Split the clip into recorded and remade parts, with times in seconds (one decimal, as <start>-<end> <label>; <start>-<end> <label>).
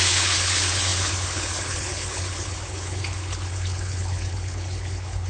0.0-5.3 remade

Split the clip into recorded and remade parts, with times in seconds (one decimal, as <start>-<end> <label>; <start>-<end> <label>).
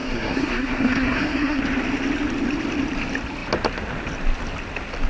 0.0-1.6 remade; 1.6-5.1 recorded